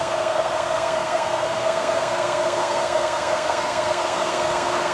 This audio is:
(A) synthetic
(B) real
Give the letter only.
A